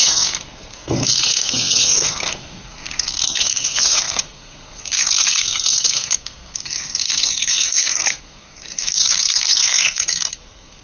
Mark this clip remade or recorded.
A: remade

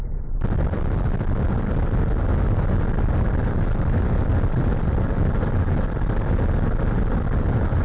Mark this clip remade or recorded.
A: recorded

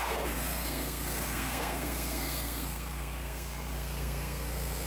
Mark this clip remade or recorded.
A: remade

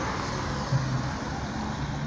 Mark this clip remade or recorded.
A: recorded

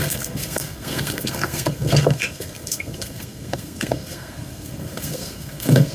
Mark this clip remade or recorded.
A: remade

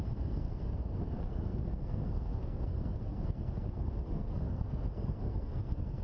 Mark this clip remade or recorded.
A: remade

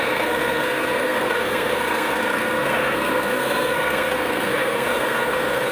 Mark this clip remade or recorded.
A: remade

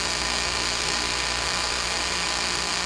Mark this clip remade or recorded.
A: remade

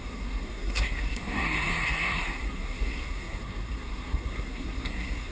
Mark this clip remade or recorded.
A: remade